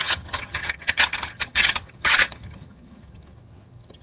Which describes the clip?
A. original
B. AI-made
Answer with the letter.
B